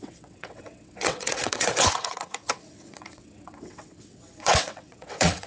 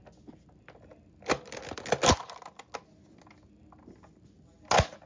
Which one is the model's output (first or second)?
first